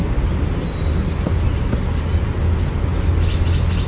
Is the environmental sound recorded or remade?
recorded